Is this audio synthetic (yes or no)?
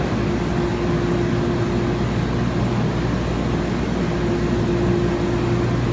no